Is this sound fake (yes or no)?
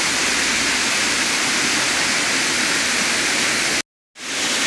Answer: no